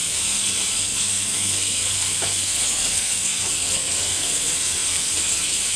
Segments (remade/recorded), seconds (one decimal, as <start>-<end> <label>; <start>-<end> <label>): 0.0-5.8 remade